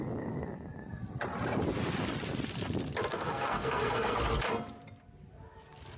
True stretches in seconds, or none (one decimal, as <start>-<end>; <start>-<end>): 0.0-3.1; 4.2-6.0